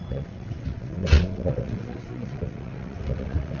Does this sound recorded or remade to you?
remade